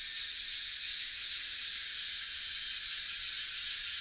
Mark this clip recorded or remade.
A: remade